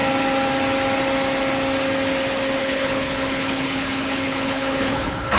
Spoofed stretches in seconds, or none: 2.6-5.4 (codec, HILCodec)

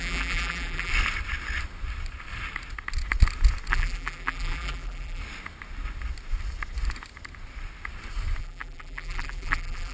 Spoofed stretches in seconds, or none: 0.0-0.9 (vocoder, BigVGAN v2); 3.7-5.2; 8.4-9.9

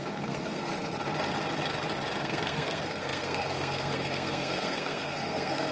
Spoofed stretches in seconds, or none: 0.0-0.7 (codec, SNAC); 2.2-5.7